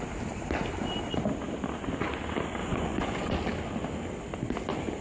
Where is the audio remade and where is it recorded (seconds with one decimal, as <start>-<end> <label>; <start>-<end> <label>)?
0.0-2.6 recorded; 2.6-3.3 remade; 3.3-5.0 recorded